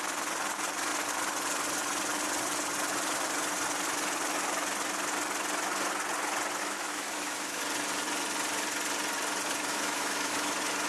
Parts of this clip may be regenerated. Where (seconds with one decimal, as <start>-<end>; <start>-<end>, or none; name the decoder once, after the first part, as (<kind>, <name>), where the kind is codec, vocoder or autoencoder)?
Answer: 6.6-7.6 (autoencoder, DAC-VAE); 9.7-10.5